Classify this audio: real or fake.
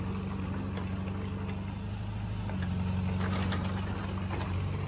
real